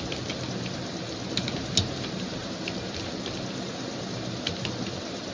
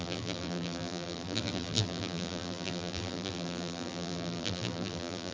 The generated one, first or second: second